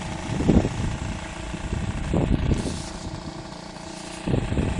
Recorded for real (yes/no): yes